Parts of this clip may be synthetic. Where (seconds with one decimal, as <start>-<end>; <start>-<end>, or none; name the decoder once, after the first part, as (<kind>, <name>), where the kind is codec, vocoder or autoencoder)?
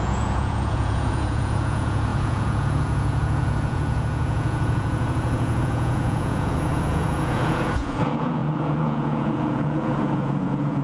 0.0-10.8 (vocoder, Vocos)